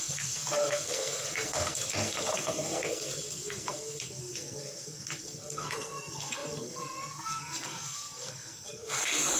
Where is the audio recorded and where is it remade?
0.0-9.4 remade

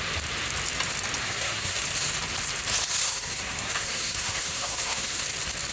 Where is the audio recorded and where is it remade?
0.0-1.2 recorded; 1.2-1.8 remade; 1.8-3.0 recorded; 3.0-5.2 remade; 5.2-5.7 recorded

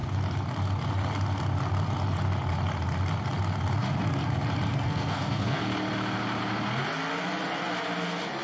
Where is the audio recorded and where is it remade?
0.0-4.7 recorded; 4.7-5.6 remade; 5.6-8.4 recorded